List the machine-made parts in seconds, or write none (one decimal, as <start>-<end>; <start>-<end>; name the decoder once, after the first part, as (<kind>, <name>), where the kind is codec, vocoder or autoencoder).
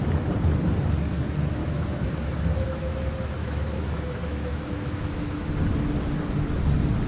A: 1.6-2.1 (autoencoder, DAC-VAE); 3.4-5.5